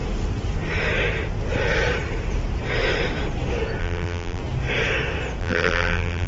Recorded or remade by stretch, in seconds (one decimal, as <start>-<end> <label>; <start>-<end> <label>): 0.0-3.8 recorded; 3.8-4.4 remade; 4.4-5.4 recorded; 5.4-6.3 remade